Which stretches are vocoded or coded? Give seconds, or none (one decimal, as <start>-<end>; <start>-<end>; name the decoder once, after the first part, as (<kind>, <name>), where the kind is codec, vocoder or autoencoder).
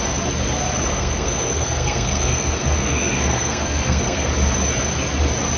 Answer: 0.9-4.3 (codec, SNAC)